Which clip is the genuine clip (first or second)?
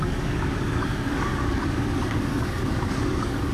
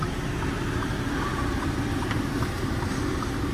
second